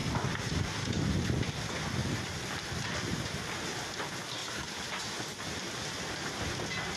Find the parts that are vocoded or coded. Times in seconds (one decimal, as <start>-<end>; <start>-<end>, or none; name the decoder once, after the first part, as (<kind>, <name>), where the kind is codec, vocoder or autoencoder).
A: 0.0-1.5 (vocoder, BigVGAN v2); 2.0-3.7